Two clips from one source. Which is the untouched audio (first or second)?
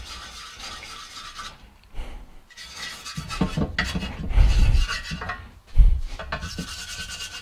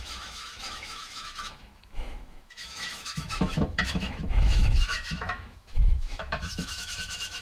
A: first